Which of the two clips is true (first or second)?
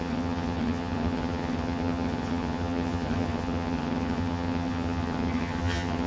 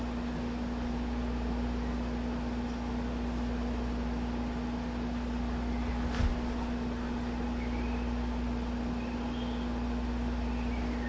second